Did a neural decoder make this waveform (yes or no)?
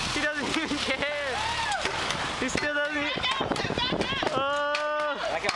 no